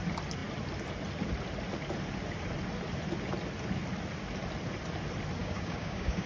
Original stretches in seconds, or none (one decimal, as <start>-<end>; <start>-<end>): 0.0-5.4